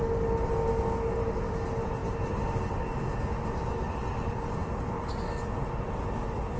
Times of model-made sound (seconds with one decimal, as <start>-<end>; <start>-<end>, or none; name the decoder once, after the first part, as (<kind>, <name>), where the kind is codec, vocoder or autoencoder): none